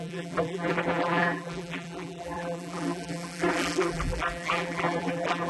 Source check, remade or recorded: remade